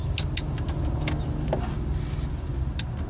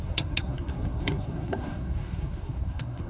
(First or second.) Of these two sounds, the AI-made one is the second